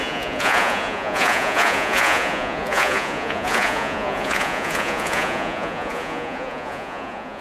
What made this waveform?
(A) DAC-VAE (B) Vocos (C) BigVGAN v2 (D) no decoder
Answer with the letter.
B